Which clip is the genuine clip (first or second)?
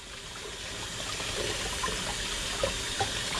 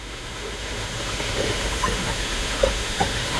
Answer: first